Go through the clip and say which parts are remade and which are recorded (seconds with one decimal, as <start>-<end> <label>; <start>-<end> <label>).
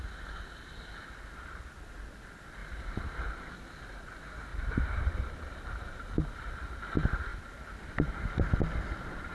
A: 0.0-2.6 recorded; 2.6-3.2 remade; 3.2-4.5 recorded; 4.5-6.5 remade; 6.5-9.3 recorded